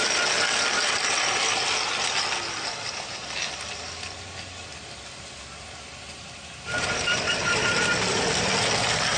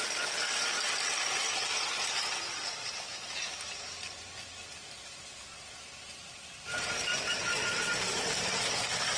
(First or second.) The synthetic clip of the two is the second